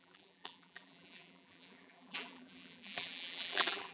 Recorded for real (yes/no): no